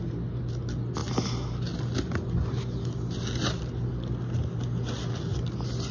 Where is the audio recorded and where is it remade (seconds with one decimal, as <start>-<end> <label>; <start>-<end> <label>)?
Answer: 0.0-5.9 recorded